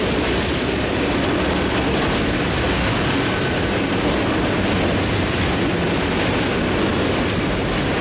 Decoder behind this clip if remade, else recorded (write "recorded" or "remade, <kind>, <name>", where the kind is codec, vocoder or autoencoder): recorded